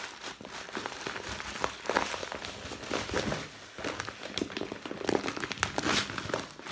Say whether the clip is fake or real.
real